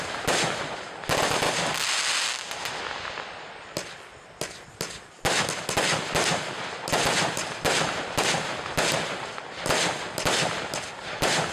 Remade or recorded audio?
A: recorded